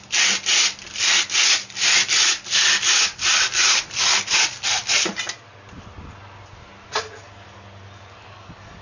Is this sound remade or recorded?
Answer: recorded